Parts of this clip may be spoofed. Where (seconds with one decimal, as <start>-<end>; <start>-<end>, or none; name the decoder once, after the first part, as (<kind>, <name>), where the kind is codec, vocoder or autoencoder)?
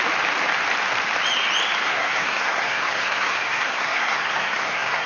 1.8-5.1 (codec, SNAC)